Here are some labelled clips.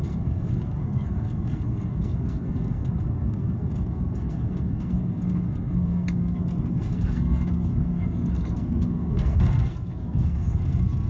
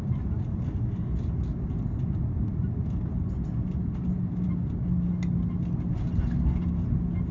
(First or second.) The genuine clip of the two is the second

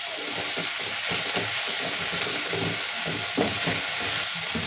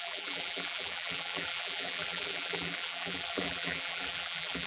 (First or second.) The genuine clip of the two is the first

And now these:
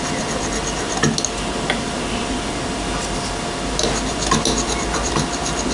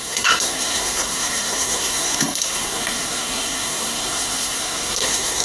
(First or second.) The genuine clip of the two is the first